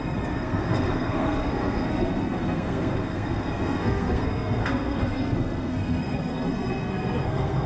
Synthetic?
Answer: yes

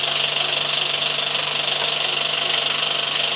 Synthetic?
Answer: no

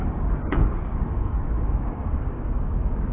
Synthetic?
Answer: yes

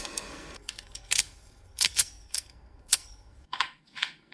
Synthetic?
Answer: yes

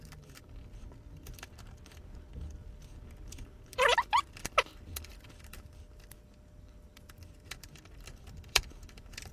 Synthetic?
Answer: yes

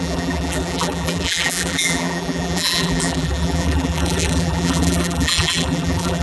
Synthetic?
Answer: yes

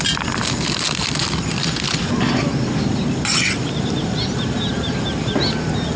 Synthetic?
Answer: no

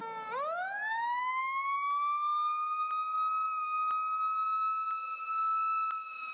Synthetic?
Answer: no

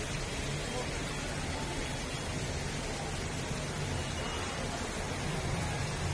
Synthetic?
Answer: no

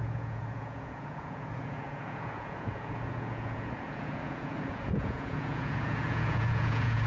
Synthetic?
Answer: yes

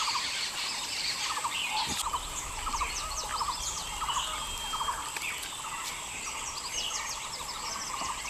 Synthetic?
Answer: no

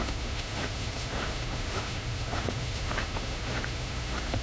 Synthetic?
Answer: yes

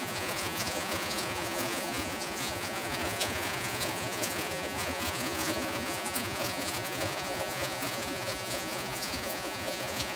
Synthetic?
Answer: yes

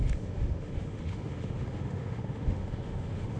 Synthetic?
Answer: yes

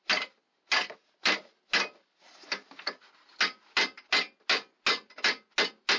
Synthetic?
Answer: no